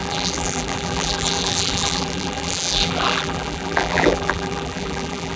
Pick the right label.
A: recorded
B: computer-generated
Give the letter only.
B